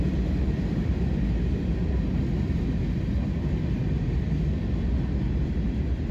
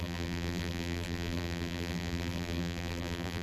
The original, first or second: first